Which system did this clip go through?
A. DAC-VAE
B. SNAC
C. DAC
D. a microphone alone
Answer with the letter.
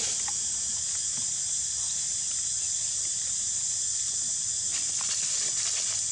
D